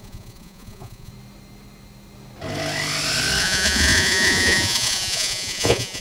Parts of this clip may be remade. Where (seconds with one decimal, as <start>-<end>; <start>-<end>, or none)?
0.0-1.1; 3.4-6.0